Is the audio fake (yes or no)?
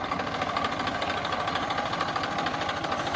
no